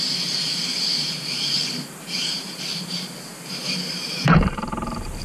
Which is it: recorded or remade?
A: remade